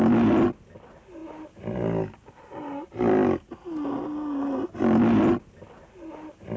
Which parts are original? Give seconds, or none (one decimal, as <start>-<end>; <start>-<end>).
0.0-6.6